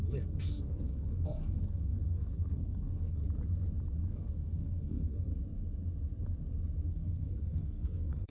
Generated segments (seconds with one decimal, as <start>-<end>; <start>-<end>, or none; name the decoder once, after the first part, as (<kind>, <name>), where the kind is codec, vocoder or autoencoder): 0.0-3.2 (codec, SNAC); 4.1-5.3; 6.9-8.3